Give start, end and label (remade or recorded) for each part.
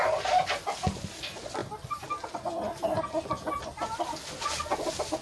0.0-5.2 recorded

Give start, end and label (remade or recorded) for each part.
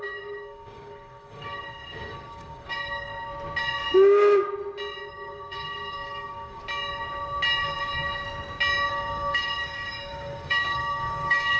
0.0-3.1 remade; 3.1-5.1 recorded; 5.1-6.6 remade; 6.6-8.9 recorded; 8.9-11.6 remade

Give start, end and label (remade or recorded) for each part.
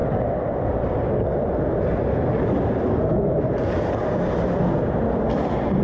0.0-5.8 recorded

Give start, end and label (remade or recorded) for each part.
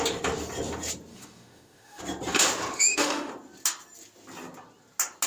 0.0-1.1 recorded; 1.1-2.0 remade; 2.0-2.7 recorded; 2.7-3.3 remade; 3.3-5.3 recorded